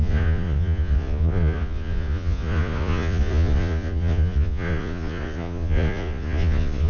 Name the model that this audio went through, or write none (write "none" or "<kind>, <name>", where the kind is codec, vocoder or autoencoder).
vocoder, Vocos